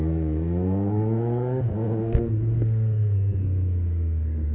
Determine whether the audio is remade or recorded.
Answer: remade